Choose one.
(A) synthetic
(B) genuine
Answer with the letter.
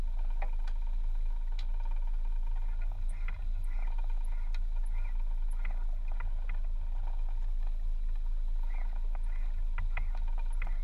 B